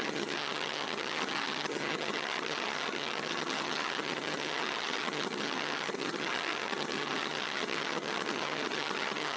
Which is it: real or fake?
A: fake